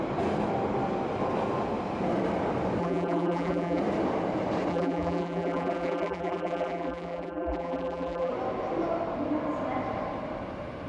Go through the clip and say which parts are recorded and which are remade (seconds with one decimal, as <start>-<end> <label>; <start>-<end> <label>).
0.0-2.8 recorded; 2.8-3.8 remade; 3.8-4.7 recorded; 4.7-8.3 remade; 8.3-10.9 recorded